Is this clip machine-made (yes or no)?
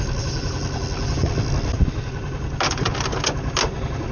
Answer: no